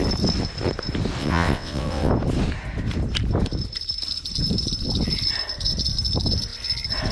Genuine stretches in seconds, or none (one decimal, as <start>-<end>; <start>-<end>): 0.0-1.2; 2.1-7.1